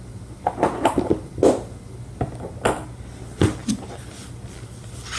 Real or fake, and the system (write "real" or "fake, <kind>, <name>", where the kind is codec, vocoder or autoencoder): real